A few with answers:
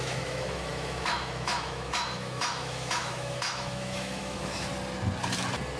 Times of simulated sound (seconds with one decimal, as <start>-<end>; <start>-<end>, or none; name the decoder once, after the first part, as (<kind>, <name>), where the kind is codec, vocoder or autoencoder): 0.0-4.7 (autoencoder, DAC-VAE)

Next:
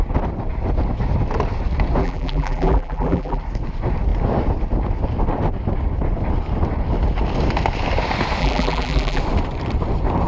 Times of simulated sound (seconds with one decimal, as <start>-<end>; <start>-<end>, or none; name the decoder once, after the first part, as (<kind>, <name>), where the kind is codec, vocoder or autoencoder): 2.0-3.4 (vocoder, BigVGAN v2); 8.4-9.2

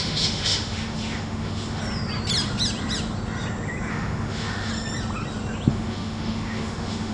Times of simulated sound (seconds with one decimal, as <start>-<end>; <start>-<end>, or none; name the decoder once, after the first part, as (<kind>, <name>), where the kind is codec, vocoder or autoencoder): 0.0-1.8 (autoencoder, DAC-VAE); 3.9-4.7; 5.7-7.1